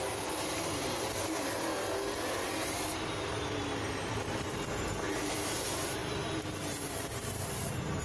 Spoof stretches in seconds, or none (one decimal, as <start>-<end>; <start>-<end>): none